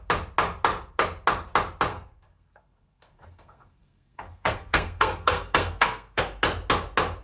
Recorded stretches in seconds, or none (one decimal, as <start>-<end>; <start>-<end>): 0.0-1.9; 6.2-7.2